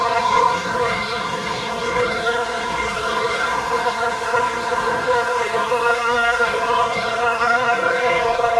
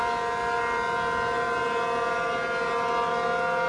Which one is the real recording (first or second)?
second